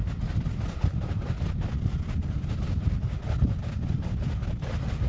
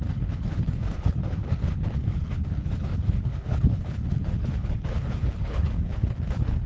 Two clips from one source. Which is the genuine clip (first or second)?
first